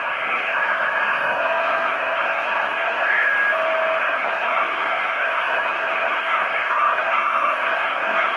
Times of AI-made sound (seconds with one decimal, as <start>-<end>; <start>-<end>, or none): 0.0-3.3; 4.0-8.4